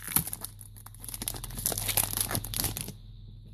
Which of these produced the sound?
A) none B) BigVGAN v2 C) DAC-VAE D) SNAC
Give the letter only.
A